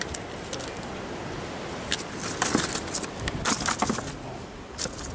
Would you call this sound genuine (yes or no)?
yes